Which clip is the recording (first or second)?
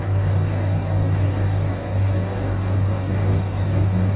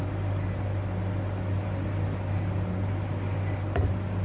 second